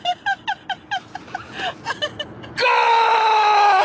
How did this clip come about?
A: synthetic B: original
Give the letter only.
B